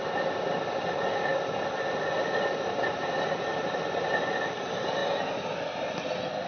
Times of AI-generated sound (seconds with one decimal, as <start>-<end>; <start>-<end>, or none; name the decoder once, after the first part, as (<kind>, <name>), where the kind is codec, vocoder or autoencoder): 0.0-1.3 (vocoder, BigVGAN v2); 2.0-5.0; 6.1-6.5